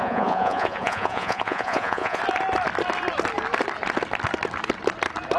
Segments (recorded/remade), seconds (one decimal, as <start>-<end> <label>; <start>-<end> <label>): 0.0-2.2 remade; 2.2-5.4 recorded

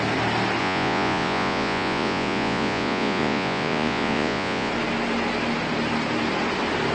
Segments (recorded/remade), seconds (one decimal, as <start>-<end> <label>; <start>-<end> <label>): 0.0-0.6 recorded; 0.6-4.7 remade; 4.7-6.9 recorded

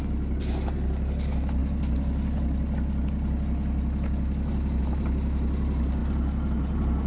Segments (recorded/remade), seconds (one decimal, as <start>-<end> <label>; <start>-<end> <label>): 0.0-7.1 recorded

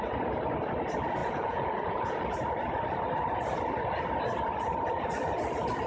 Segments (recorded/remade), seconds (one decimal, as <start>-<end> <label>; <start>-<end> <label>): 0.0-1.2 recorded; 1.2-2.2 remade; 2.2-5.9 recorded

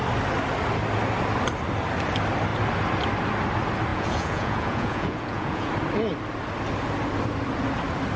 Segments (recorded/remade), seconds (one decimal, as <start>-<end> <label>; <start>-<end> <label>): 0.0-3.9 recorded; 3.9-5.7 remade; 5.7-8.2 recorded

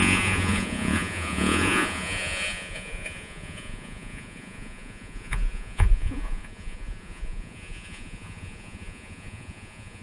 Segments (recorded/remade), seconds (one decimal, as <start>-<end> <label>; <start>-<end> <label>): 0.0-10.0 remade